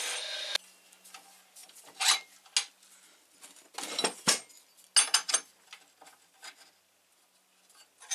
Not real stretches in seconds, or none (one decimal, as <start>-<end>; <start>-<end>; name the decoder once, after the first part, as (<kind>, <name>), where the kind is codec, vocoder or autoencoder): none